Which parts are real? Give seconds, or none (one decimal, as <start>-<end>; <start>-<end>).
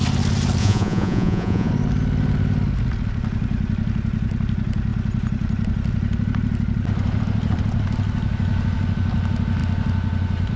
0.0-0.6; 1.7-10.6